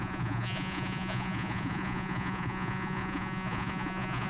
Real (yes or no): no